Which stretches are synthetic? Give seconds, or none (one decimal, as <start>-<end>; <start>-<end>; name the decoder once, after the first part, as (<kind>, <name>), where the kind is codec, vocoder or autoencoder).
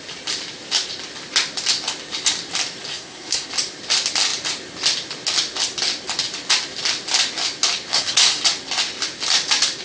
2.9-3.5 (codec, SNAC); 7.9-8.4